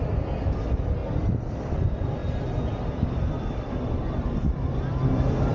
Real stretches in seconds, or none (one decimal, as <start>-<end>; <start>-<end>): 1.0-1.7; 2.2-3.6